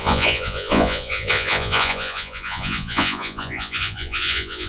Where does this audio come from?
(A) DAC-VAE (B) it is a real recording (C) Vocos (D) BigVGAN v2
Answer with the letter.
C